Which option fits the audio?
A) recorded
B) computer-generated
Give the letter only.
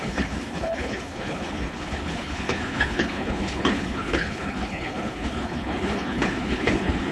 B